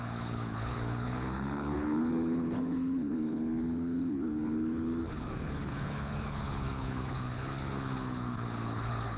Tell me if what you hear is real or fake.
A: fake